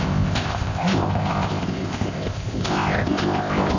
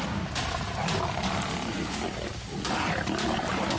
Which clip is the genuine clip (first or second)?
second